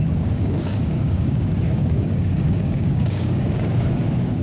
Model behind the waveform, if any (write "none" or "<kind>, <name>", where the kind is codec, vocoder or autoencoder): codec, DAC